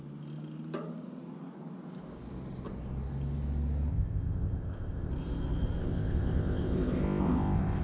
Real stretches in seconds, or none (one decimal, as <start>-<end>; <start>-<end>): 0.0-3.9; 5.1-5.8